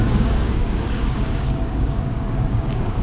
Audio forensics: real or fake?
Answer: fake